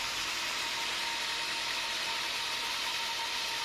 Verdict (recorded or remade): recorded